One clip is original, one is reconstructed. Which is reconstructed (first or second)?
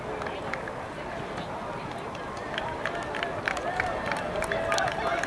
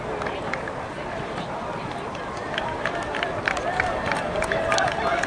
second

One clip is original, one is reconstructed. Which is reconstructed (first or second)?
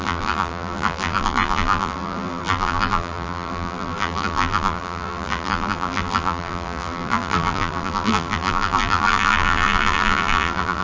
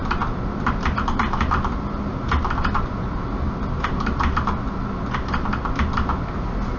first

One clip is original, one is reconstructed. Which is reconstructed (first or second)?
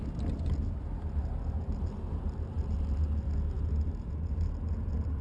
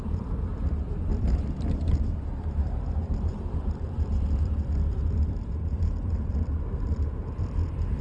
second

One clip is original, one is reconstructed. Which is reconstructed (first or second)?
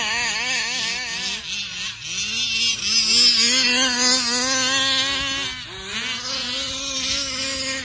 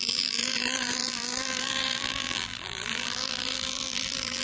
second